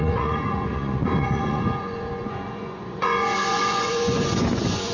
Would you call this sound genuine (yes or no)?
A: no